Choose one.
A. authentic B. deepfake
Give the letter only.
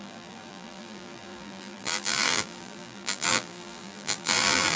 B